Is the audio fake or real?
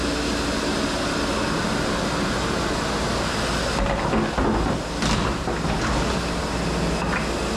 real